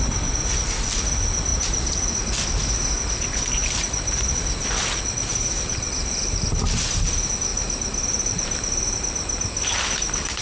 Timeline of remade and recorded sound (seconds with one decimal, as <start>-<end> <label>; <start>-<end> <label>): 0.0-1.5 recorded; 1.5-2.3 remade; 2.3-3.6 recorded; 3.6-4.4 remade; 4.4-5.3 recorded; 5.3-6.5 remade; 6.5-7.5 recorded; 7.5-10.4 remade